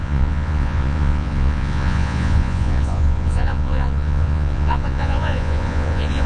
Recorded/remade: remade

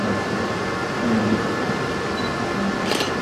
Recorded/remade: recorded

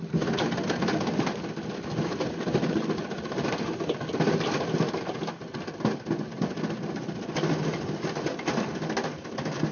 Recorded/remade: recorded